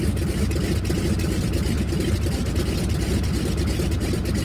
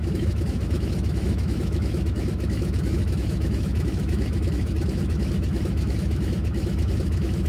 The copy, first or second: second